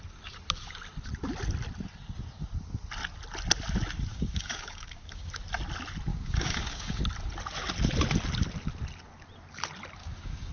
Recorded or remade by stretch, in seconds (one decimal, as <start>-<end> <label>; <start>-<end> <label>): 0.0-4.1 recorded; 4.1-5.3 remade; 5.3-6.1 recorded; 6.1-7.0 remade; 7.0-10.0 recorded; 10.0-10.5 remade

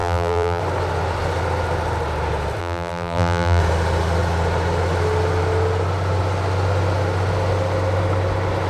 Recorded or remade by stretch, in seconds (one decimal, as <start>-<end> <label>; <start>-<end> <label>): 0.0-0.6 remade; 0.6-2.6 recorded; 2.6-3.6 remade; 3.6-8.7 recorded

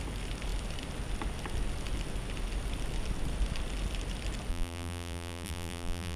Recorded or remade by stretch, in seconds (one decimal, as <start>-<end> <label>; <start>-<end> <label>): 0.0-4.5 recorded; 4.5-6.2 remade